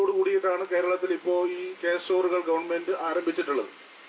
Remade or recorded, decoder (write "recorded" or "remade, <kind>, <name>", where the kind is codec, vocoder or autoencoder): recorded